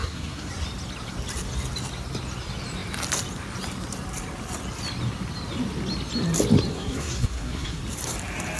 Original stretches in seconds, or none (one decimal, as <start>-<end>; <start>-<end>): 0.5-6.7; 7.8-8.6